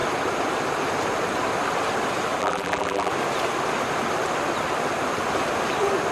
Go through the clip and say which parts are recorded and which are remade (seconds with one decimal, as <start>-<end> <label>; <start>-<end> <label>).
0.0-2.4 recorded; 2.4-3.1 remade; 3.1-6.1 recorded